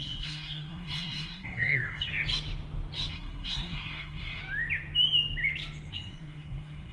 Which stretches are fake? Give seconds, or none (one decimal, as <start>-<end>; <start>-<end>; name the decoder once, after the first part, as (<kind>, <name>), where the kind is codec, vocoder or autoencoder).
0.0-2.1 (codec, SNAC); 3.1-4.4; 5.9-6.9